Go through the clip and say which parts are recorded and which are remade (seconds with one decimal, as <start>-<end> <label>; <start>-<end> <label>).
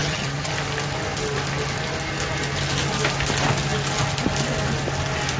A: 0.0-0.5 remade; 0.5-5.4 recorded